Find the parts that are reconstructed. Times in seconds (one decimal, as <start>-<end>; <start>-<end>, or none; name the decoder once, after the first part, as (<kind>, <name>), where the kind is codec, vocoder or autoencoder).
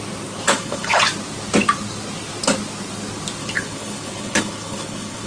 0.5-1.0 (codec, HILCodec); 3.4-5.3